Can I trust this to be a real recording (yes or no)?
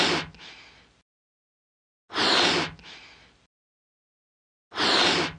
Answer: yes